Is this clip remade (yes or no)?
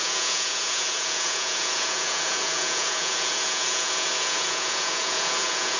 yes